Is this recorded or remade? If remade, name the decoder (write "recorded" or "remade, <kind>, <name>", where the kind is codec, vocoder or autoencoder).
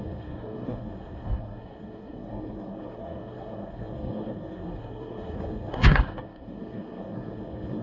remade, codec, SNAC